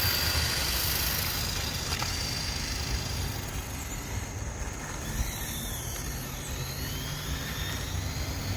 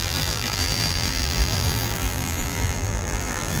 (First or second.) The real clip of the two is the first